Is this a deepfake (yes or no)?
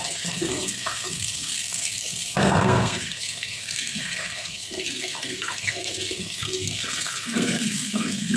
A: yes